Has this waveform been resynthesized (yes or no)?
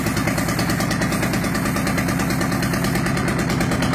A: no